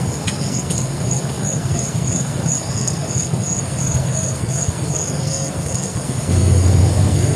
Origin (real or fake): fake